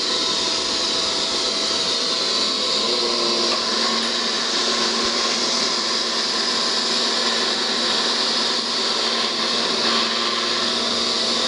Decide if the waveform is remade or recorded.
recorded